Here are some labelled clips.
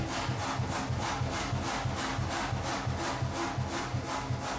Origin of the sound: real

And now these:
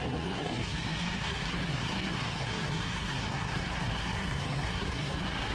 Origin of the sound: fake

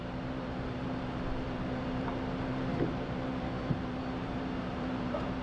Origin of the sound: fake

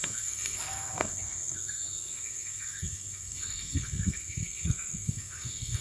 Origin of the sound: fake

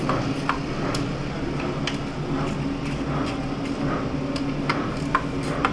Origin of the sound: real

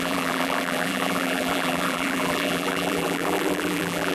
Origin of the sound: fake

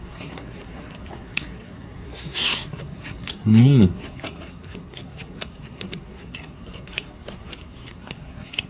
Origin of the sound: fake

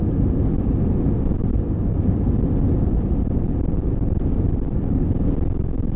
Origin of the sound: real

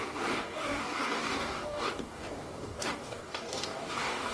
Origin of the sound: fake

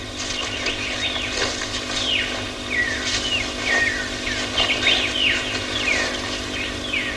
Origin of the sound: real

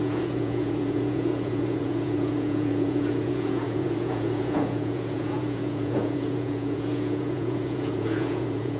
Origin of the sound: fake